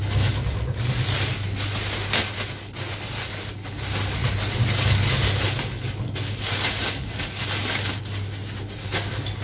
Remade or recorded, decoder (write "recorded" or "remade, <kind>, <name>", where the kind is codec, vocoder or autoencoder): recorded